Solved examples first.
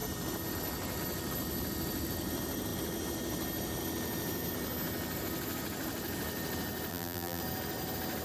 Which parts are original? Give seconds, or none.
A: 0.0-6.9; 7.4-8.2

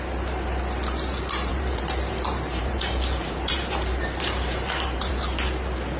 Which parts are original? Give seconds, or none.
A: 0.0-1.5; 5.1-6.0

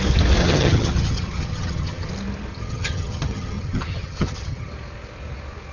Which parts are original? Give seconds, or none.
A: 0.0-0.4; 2.1-2.5; 4.7-5.7

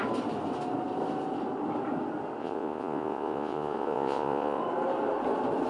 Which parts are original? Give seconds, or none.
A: 0.0-2.4; 4.6-5.7

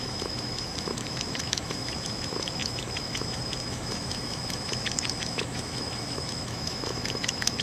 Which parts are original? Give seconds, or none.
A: none

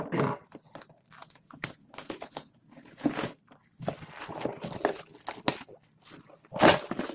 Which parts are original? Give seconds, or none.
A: 0.0-1.2; 3.4-7.1

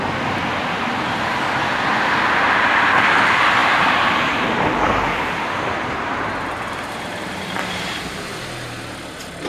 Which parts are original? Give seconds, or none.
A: 0.0-3.6; 8.3-9.5

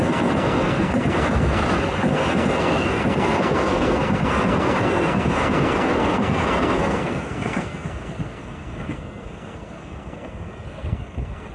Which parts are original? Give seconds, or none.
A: 1.6-2.1